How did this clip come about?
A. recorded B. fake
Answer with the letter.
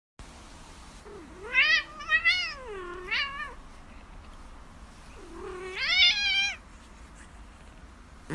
A